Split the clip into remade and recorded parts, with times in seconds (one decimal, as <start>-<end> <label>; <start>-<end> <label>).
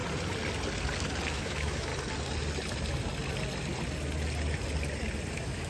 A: 0.0-1.3 recorded; 1.3-1.9 remade; 1.9-5.3 recorded; 5.3-5.7 remade